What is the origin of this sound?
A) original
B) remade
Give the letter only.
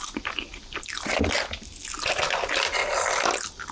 A